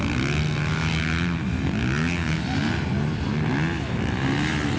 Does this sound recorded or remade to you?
recorded